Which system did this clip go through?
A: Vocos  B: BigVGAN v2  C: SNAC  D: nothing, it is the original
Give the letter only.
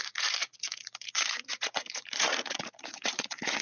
A